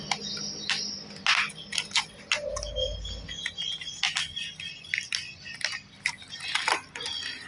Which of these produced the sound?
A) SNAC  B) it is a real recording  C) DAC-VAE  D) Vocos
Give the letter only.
B